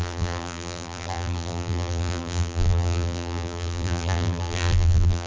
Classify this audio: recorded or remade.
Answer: remade